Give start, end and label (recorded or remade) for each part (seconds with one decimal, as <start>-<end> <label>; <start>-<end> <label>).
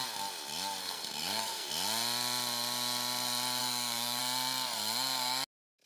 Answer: 0.0-0.8 recorded; 0.8-1.7 remade; 1.7-3.6 recorded; 3.6-4.2 remade; 4.2-5.9 recorded